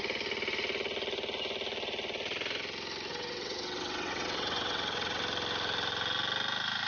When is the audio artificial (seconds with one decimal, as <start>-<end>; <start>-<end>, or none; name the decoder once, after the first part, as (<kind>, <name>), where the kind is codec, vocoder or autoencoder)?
3.1-5.2 (vocoder, WaveNeXt)